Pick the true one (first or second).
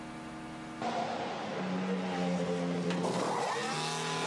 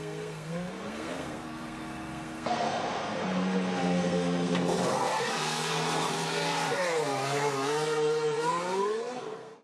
first